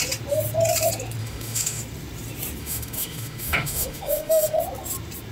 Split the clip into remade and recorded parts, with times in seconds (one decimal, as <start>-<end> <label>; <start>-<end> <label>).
0.0-1.2 recorded; 1.2-1.8 remade; 1.8-2.6 recorded; 2.6-4.6 remade; 4.6-5.3 recorded